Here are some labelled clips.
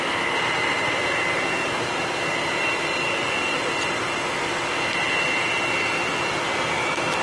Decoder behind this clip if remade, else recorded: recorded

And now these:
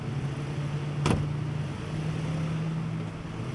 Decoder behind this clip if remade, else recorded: recorded